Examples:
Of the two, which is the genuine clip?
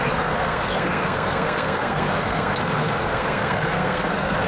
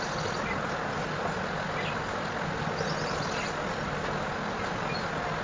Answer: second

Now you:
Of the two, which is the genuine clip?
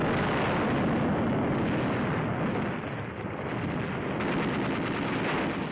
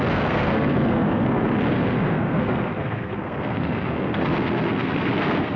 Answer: first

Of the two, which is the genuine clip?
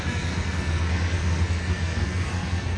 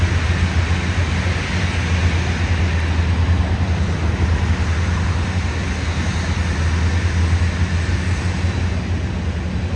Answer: second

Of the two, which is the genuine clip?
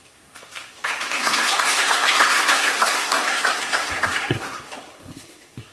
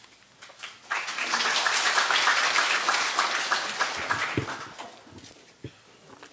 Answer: second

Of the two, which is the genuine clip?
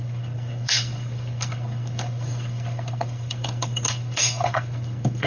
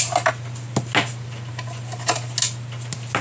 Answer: second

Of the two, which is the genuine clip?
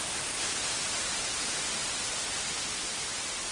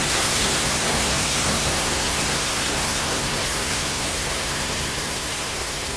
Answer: first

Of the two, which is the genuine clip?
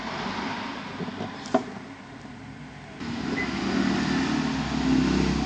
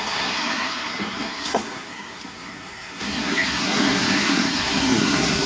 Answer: first